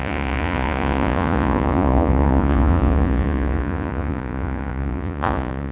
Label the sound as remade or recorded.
remade